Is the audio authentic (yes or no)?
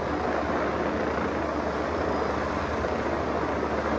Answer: yes